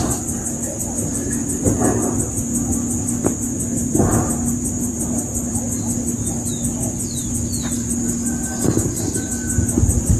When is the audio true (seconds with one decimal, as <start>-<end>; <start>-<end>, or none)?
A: 0.0-3.8; 5.6-10.2